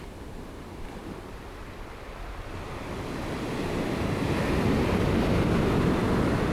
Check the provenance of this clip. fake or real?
real